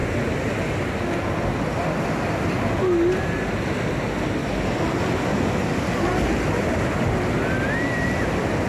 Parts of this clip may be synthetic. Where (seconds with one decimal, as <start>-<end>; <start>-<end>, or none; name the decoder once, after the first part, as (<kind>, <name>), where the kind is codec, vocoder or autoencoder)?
none